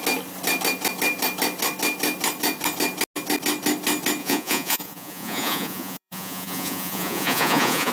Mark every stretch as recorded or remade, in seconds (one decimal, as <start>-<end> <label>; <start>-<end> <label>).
0.0-4.2 recorded; 4.2-7.9 remade